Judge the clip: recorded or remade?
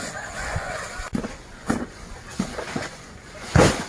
remade